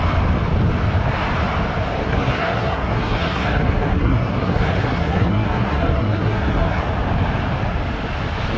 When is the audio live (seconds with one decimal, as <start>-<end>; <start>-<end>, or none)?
0.0-2.0; 6.8-8.6